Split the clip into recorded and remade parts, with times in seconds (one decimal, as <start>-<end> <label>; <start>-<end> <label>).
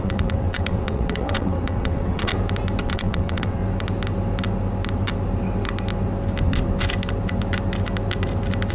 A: 0.0-2.3 remade; 2.3-2.8 recorded; 2.8-3.6 remade; 3.6-8.7 recorded